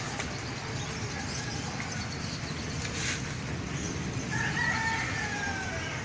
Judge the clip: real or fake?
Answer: real